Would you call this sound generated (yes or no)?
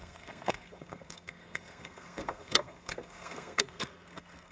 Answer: yes